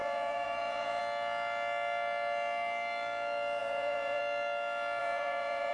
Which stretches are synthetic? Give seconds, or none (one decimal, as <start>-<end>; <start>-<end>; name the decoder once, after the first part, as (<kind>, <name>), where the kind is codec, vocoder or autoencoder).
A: 0.0-1.0 (vocoder, Vocos); 3.6-4.2; 5.0-5.7